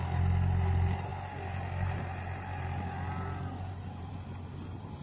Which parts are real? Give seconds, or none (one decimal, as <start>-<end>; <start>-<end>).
0.0-5.0